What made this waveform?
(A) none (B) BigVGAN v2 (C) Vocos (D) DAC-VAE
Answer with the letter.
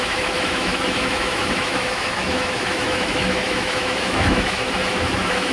D